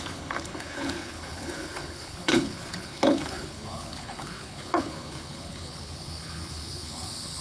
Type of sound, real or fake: fake